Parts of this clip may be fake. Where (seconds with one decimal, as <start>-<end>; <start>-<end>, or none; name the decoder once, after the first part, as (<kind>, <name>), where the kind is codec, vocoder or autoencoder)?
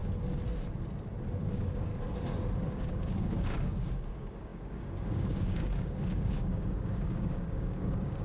1.4-1.9 (codec, DAC); 2.7-8.2